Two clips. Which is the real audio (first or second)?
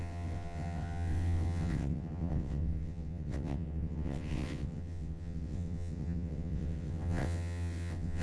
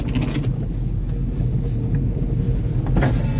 second